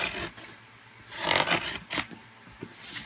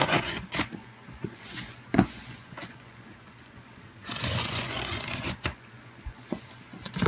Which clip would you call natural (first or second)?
first